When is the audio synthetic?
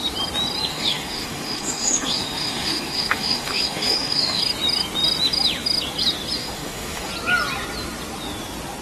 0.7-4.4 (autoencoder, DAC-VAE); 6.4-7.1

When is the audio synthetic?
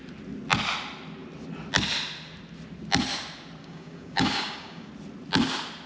3.6-4.9 (codec, DAC)